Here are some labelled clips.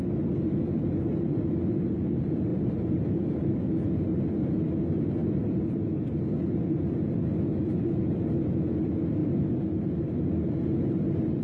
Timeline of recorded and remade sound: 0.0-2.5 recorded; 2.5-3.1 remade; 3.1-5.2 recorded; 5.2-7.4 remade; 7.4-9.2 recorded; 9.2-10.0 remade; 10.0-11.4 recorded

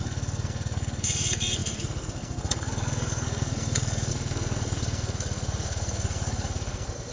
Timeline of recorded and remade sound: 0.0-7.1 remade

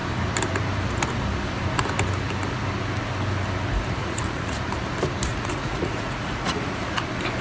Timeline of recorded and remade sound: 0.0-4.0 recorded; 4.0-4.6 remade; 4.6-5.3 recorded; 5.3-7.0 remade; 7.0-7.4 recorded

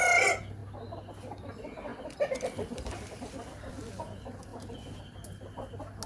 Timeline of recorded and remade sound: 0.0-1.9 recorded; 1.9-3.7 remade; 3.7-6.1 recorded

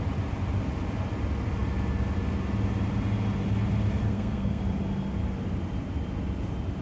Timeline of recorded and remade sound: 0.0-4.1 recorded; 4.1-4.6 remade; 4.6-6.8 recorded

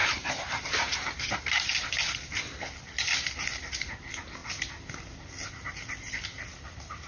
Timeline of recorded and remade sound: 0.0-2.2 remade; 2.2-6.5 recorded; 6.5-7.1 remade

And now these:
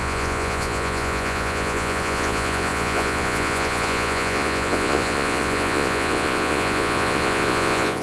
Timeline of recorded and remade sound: 0.0-8.0 remade